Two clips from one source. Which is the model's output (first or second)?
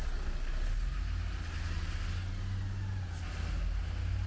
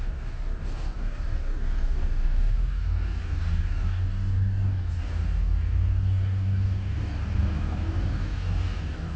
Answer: second